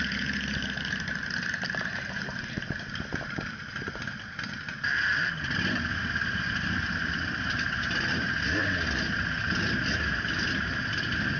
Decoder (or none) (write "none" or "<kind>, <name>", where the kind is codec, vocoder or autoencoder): none